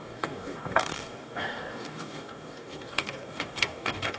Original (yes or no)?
no